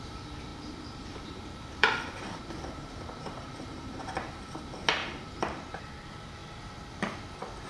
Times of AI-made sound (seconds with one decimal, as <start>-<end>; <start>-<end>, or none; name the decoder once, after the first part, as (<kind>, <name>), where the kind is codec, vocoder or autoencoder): 0.5-4.6 (vocoder, BigVGAN v2); 5.0-5.7